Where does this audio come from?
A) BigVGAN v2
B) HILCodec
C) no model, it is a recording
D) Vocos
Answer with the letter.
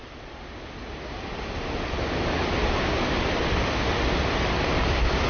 C